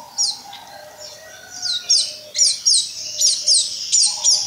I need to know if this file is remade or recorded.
recorded